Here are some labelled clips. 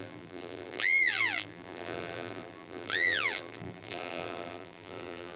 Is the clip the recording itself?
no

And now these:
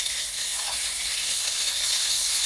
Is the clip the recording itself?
no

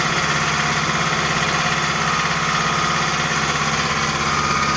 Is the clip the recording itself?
yes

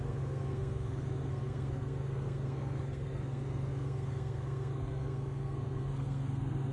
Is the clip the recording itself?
no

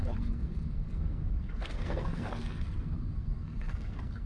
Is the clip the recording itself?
no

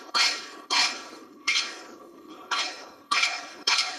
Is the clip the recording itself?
no